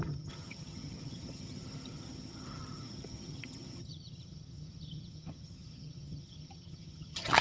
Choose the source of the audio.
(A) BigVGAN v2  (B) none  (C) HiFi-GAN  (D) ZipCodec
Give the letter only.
C